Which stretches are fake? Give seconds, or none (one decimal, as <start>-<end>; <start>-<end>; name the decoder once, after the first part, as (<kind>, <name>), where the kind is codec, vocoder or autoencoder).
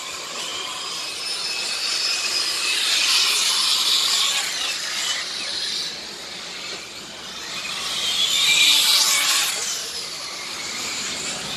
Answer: 0.0-0.5 (vocoder, BigVGAN v2); 1.7-11.6